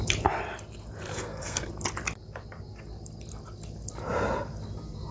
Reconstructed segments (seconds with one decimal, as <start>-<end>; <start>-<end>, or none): 1.1-1.7